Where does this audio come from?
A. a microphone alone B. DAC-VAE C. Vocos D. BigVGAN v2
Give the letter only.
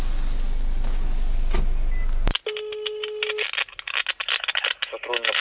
A